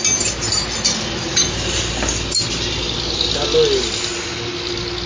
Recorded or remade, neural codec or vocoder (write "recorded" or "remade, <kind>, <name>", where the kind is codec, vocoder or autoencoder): recorded